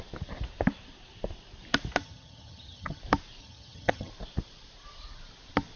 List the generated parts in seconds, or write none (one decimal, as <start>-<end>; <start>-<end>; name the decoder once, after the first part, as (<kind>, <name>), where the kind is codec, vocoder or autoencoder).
2.0-3.0 (vocoder, HiFi-GAN); 3.4-4.1